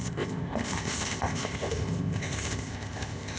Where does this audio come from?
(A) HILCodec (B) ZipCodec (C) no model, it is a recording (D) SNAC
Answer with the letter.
B